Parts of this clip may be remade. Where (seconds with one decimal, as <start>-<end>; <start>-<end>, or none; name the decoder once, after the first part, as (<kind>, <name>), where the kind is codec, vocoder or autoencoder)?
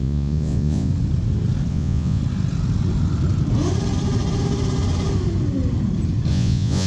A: 0.0-0.9 (vocoder, Vocos); 1.7-2.2; 6.3-6.9